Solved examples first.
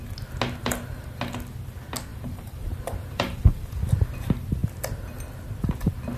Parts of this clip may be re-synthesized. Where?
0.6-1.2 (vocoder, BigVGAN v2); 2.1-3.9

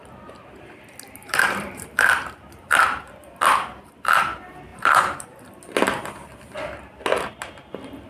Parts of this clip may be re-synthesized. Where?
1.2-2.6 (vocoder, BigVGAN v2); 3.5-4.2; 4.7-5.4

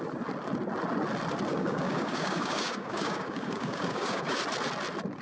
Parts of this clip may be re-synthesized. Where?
1.5-4.4 (codec, DAC)